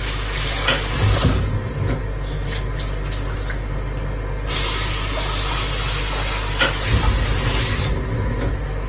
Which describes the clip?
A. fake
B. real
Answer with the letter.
B